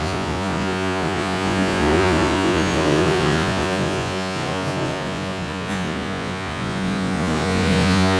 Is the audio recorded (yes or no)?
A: no